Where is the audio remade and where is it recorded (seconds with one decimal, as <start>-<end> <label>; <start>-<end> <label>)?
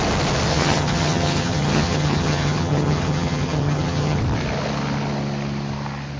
0.0-0.5 recorded; 0.5-4.2 remade; 4.2-6.2 recorded